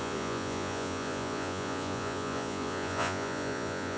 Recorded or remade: remade